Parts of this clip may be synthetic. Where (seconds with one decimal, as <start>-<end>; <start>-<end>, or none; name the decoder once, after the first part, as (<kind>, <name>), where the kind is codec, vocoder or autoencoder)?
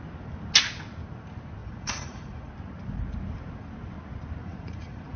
1.6-2.5 (vocoder, Vocos); 4.4-5.2